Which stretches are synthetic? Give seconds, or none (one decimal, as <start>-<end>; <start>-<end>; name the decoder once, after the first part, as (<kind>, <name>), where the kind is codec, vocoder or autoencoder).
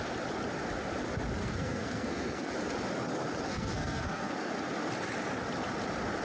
1.4-2.5 (codec, SNAC); 3.5-4.5